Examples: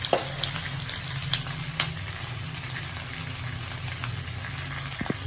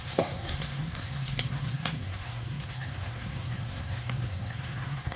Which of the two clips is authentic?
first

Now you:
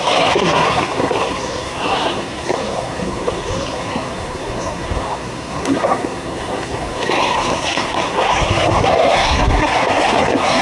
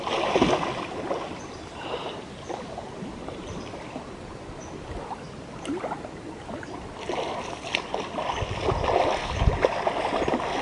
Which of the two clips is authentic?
second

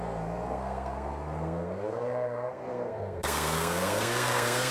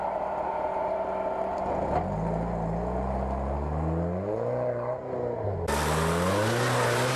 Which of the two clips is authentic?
second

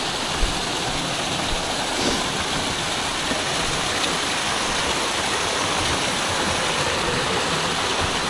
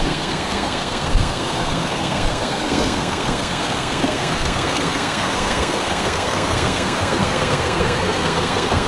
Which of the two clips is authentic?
first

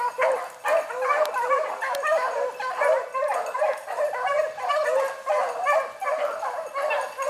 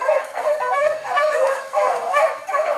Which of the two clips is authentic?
first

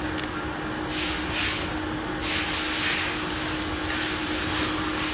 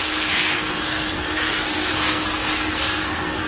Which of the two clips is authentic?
first